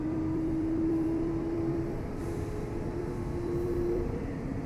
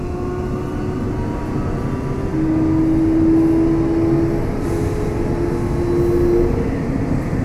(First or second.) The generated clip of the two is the first